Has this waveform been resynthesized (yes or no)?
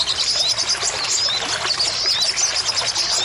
no